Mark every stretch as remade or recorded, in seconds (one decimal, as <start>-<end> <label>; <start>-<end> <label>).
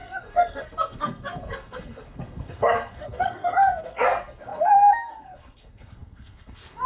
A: 0.0-6.9 remade